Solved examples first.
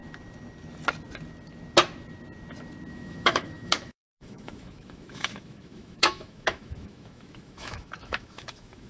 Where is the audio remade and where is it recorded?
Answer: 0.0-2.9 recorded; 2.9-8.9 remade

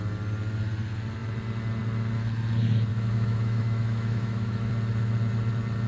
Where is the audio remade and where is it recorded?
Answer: 0.0-2.9 recorded; 2.9-4.7 remade; 4.7-5.9 recorded

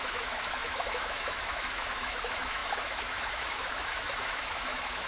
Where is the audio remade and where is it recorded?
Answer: 0.0-5.1 remade

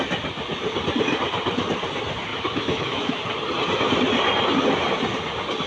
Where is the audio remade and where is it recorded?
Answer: 0.0-2.3 recorded; 2.3-3.2 remade; 3.2-5.7 recorded

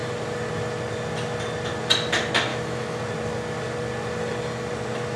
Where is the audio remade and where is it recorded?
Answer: 0.0-2.5 recorded; 2.5-3.0 remade; 3.0-5.2 recorded